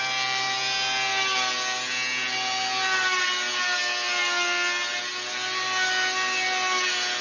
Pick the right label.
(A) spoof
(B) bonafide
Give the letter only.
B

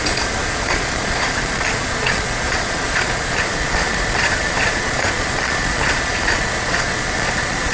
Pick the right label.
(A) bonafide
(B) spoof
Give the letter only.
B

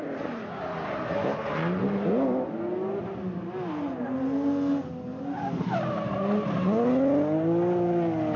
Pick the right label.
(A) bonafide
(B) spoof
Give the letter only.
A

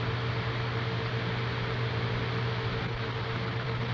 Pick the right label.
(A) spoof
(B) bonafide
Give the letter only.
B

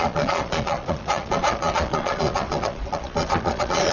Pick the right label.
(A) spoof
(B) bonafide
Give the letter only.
A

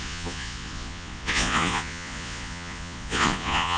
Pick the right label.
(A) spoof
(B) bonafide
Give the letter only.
A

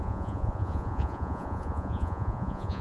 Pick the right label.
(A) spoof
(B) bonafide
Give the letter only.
A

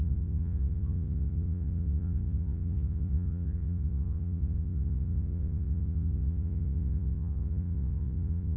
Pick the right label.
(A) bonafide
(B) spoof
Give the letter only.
B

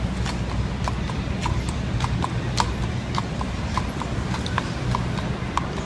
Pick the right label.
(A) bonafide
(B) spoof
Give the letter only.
A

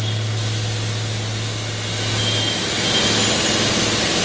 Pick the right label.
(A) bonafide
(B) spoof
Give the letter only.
A